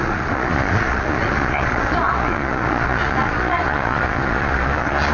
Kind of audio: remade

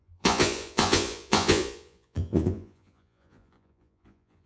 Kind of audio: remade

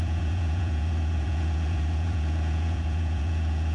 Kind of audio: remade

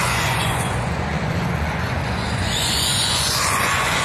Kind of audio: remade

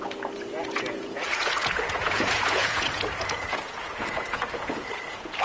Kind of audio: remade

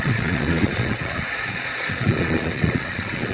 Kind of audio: remade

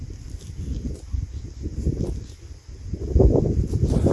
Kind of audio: recorded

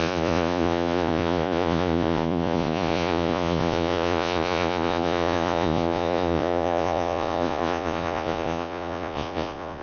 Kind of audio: remade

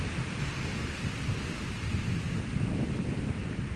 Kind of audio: recorded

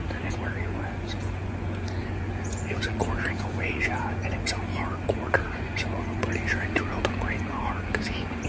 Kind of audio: remade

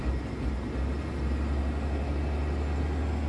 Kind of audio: recorded